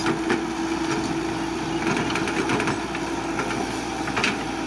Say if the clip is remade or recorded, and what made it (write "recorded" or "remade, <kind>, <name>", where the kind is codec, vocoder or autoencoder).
recorded